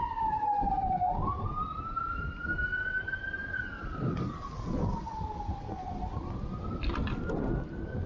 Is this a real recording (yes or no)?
yes